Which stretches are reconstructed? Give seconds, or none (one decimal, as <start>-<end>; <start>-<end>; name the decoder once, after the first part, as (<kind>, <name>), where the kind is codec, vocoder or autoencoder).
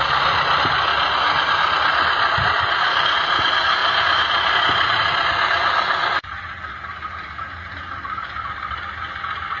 none